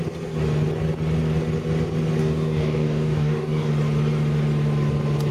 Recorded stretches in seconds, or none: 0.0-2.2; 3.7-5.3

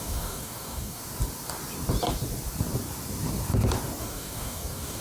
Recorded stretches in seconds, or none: 1.0-4.0

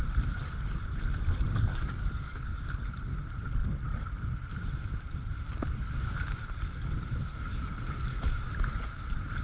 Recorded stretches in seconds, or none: 0.0-1.7; 2.5-7.5; 8.2-9.4

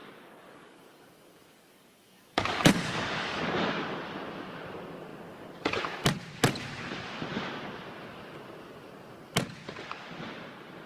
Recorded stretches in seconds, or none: 3.4-10.9

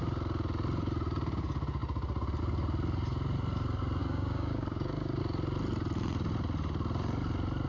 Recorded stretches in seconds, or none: 0.0-4.0; 5.2-7.7

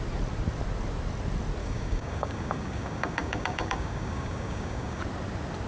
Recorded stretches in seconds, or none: 0.0-1.6; 5.0-5.7